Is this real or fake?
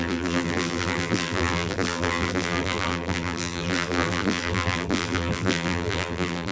fake